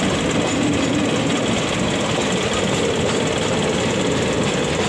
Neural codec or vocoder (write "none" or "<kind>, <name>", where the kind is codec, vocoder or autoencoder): none